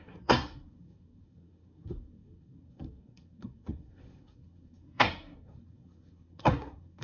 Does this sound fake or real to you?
fake